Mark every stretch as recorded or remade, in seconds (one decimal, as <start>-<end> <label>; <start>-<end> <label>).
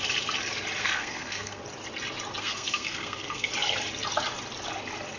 0.0-0.8 recorded; 0.8-1.6 remade; 1.6-2.4 recorded; 2.4-3.5 remade; 3.5-5.2 recorded